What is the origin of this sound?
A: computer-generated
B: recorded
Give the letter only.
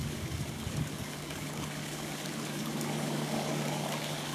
A